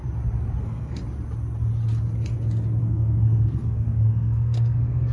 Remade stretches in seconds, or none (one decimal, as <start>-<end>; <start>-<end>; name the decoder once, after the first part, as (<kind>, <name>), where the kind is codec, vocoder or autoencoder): 0.6-1.0 (codec, SNAC); 2.8-5.1